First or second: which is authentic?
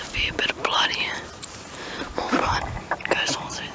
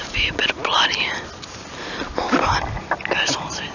second